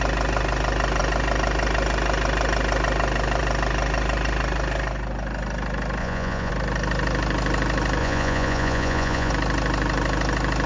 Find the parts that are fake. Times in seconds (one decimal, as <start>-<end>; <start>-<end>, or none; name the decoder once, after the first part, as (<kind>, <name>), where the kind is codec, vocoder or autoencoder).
6.0-6.5 (vocoder, Vocos); 8.0-9.3